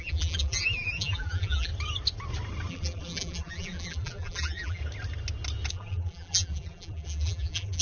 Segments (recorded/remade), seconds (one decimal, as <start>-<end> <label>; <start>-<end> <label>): 0.0-1.7 remade; 1.7-2.7 recorded; 2.7-4.8 remade; 4.8-5.7 recorded; 5.7-7.8 remade